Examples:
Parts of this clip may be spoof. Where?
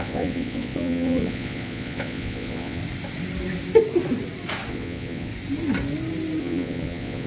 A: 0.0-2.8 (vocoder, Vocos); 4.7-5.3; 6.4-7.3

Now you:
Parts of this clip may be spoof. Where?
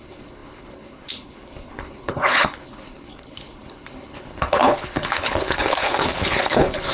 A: 0.0-6.9 (codec, HILCodec)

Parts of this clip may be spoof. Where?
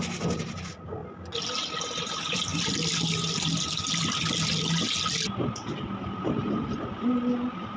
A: none